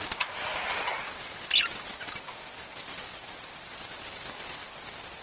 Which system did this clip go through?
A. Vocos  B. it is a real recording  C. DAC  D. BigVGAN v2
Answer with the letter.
B